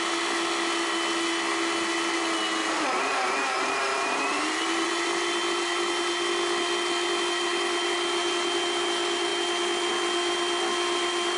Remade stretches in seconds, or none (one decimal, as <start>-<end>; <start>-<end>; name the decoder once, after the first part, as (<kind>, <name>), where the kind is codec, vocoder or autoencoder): 2.6-4.9 (vocoder, BigVGAN v2)